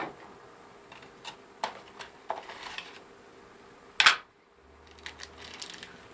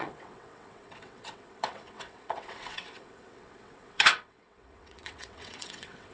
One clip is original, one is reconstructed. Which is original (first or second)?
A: first